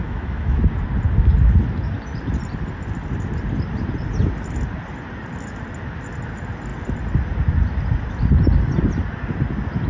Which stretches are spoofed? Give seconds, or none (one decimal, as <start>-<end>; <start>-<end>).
0.0-0.6